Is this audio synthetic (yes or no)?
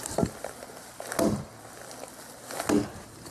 no